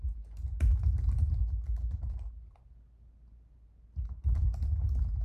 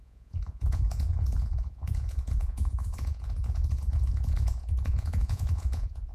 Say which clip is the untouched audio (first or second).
first